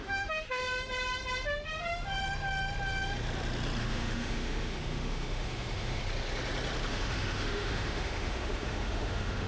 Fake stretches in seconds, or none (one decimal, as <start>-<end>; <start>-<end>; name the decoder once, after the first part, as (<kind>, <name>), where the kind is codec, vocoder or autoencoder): 0.0-0.6 (autoencoder, DAC-VAE); 3.8-6.0; 6.9-9.5